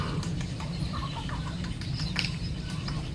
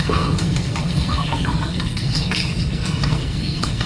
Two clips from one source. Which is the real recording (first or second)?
first